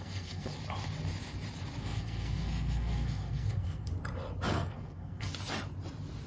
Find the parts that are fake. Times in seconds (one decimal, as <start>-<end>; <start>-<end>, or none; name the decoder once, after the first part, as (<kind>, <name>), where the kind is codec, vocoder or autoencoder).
0.0-0.5 (codec, SNAC); 1.8-3.9; 4.5-5.3